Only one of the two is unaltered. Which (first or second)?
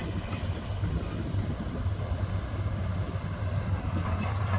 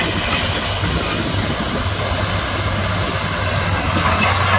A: second